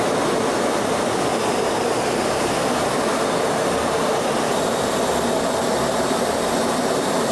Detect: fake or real fake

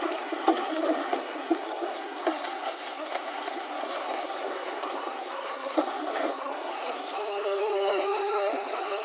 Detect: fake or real fake